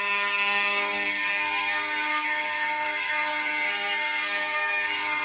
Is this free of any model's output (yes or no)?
no